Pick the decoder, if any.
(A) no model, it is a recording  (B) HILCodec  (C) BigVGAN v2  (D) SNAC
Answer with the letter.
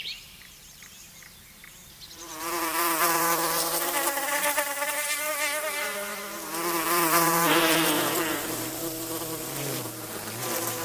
C